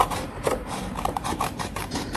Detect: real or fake fake